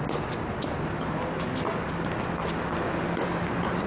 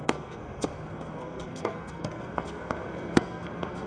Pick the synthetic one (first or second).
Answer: second